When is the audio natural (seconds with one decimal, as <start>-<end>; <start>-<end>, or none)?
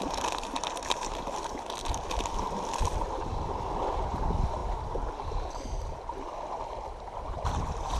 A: 0.0-8.0